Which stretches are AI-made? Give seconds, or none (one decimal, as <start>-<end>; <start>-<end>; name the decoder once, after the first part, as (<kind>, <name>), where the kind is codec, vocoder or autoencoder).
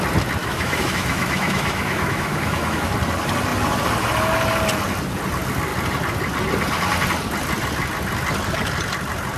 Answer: 0.4-2.9 (autoencoder, DAC-VAE)